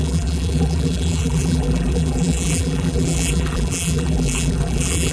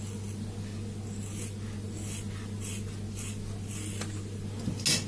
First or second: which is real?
second